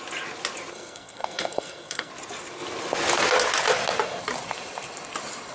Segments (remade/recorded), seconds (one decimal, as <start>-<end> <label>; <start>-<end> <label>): 0.0-0.7 recorded; 0.7-2.1 remade; 2.1-5.5 recorded